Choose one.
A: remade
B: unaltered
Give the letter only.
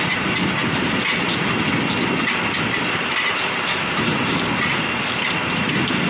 B